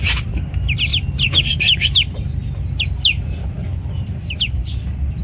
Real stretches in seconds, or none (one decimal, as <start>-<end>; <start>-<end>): 0.9-1.5; 4.6-5.2